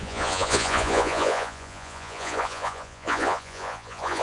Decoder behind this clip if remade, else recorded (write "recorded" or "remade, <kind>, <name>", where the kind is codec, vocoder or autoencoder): remade, vocoder, Vocos